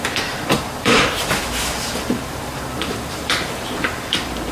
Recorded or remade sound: remade